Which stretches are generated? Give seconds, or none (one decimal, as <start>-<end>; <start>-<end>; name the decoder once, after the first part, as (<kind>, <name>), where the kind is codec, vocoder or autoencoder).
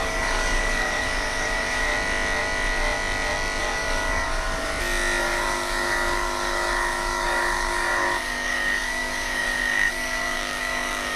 0.0-1.9 (codec, DAC); 3.6-4.7; 5.2-11.2